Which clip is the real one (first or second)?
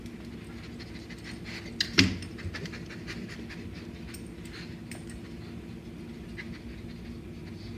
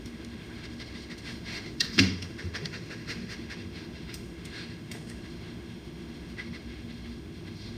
first